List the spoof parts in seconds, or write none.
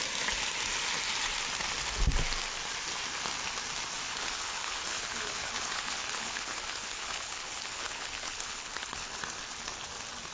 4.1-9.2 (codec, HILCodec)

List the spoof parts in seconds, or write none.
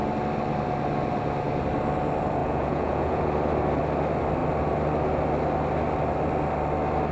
2.4-3.2 (vocoder, Vocos)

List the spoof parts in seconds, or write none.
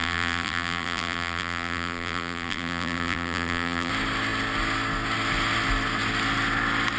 0.0-3.9 (vocoder, BigVGAN v2)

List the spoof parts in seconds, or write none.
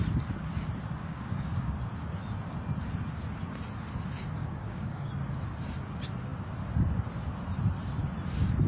1.0-1.7 (codec, DAC); 4.4-5.1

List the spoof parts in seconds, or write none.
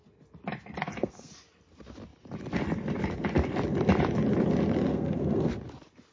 0.8-1.3 (codec, SNAC); 4.9-5.5